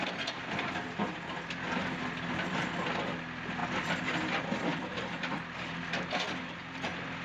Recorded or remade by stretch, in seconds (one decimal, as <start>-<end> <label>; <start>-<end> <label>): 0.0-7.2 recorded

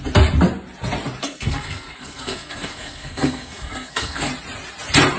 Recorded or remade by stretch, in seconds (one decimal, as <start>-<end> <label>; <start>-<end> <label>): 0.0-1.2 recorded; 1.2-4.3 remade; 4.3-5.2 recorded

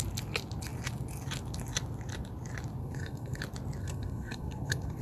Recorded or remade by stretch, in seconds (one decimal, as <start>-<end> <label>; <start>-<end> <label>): 0.0-2.8 recorded; 2.8-3.4 remade; 3.4-3.8 recorded; 3.8-5.0 remade

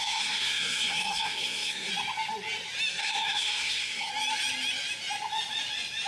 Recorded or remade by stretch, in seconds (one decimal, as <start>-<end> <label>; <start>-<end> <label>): 0.0-1.9 remade; 1.9-3.0 recorded; 3.0-4.1 remade; 4.1-6.1 recorded